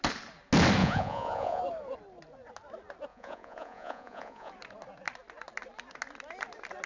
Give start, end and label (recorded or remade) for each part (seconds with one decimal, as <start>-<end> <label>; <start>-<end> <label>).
0.0-0.8 recorded; 0.8-1.6 remade; 1.6-3.1 recorded; 3.1-4.5 remade; 4.5-6.9 recorded